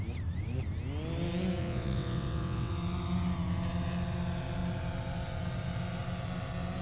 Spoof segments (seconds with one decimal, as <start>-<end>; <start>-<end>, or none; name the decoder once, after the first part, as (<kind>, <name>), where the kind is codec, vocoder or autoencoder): 1.6-2.7 (vocoder, WaveNeXt)